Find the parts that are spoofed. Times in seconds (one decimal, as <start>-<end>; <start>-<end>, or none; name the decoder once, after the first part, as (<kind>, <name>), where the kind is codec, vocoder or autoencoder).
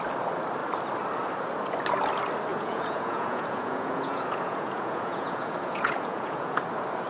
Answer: 2.5-6.6 (vocoder, Vocos)